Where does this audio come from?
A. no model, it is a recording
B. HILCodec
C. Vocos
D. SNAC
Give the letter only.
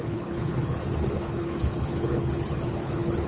B